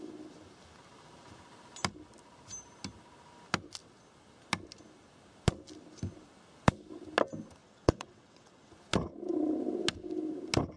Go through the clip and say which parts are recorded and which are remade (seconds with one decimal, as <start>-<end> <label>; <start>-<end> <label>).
0.0-7.6 recorded; 7.6-8.7 remade; 8.7-10.8 recorded